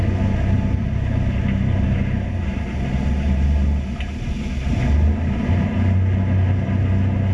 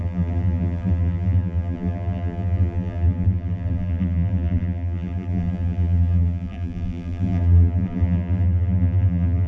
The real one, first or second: first